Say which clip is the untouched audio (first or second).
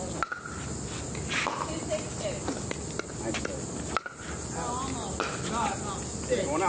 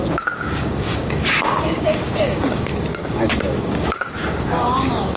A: first